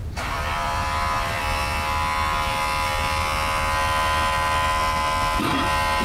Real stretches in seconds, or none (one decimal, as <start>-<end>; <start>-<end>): 1.4-6.0

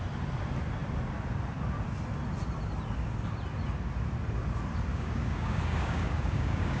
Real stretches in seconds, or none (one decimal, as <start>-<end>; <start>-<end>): 0.0-4.9